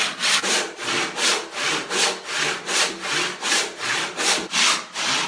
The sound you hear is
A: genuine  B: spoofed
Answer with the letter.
A